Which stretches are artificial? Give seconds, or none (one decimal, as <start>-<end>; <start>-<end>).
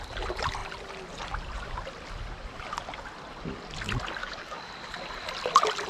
4.2-4.7